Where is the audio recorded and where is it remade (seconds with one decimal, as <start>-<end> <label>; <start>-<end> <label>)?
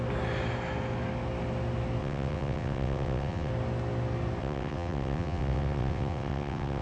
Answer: 0.0-2.0 recorded; 2.0-3.5 remade; 3.5-4.4 recorded; 4.4-6.8 remade